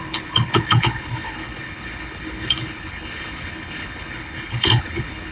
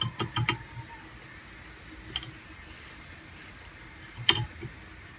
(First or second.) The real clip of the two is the second